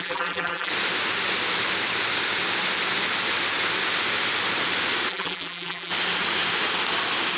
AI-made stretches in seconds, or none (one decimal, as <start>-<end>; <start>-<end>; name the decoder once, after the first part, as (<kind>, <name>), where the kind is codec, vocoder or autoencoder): 0.0-0.7 (vocoder, BigVGAN v2); 5.1-5.9